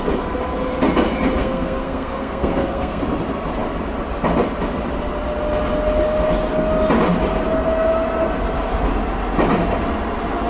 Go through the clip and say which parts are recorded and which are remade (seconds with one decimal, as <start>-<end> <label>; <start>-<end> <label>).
0.0-1.4 recorded; 1.4-3.0 remade; 3.0-10.5 recorded